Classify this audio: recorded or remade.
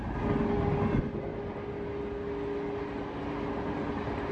recorded